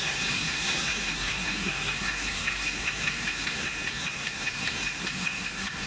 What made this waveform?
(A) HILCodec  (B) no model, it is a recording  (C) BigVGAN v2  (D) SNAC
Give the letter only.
D